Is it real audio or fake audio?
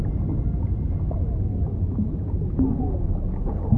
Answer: real